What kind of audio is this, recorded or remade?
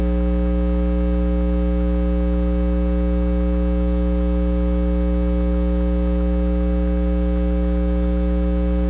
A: recorded